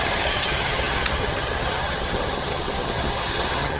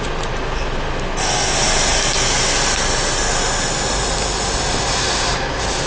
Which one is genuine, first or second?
second